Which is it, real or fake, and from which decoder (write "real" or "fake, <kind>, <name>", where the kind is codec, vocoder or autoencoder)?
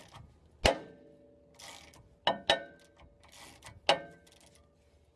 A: real